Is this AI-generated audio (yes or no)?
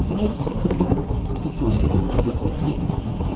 yes